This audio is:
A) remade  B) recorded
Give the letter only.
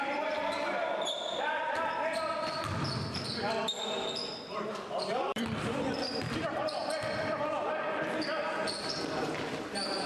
A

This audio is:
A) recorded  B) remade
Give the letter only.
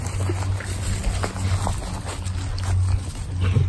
A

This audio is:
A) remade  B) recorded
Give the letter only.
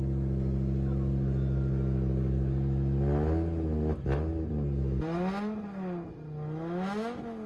B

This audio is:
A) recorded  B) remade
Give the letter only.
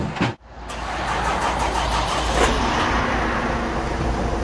A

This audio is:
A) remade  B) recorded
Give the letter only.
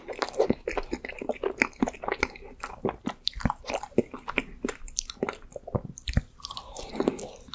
B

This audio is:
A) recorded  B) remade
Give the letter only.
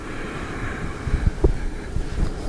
B